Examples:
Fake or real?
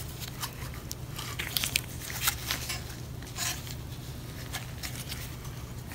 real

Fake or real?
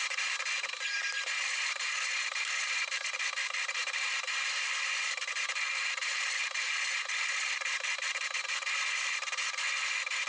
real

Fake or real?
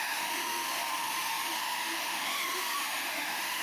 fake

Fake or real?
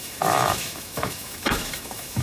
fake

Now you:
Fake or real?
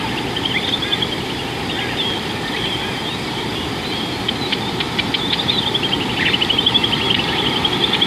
real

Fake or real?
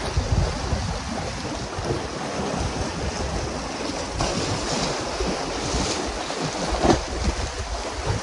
real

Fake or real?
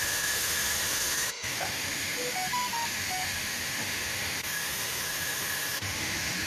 fake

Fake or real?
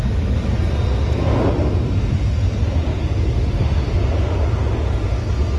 real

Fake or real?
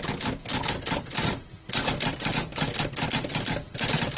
real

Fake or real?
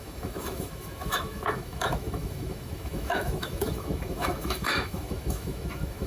fake